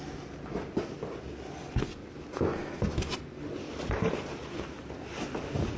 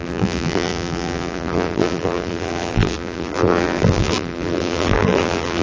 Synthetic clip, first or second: second